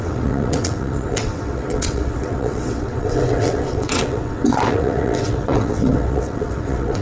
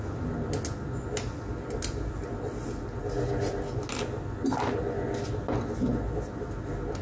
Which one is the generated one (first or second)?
first